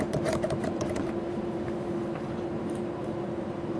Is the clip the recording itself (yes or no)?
no